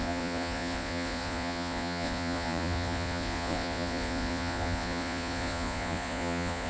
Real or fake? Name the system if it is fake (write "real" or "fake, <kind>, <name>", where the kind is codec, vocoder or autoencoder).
fake, vocoder, Vocos